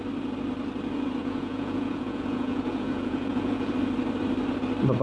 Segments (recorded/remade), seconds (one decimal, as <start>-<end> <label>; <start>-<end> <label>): 0.0-1.2 recorded; 1.2-3.7 remade; 3.7-5.0 recorded